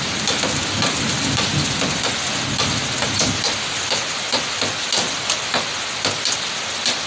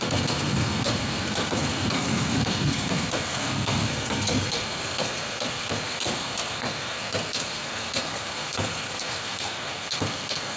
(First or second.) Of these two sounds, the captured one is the first